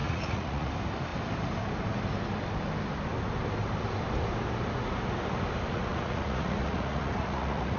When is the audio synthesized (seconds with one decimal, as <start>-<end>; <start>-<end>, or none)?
0.0-0.7; 5.7-7.8